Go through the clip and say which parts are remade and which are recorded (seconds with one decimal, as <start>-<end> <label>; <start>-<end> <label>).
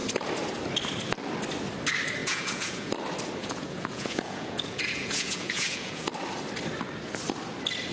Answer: 0.0-2.2 recorded; 2.2-2.9 remade; 2.9-3.4 recorded; 3.4-6.1 remade; 6.1-7.9 recorded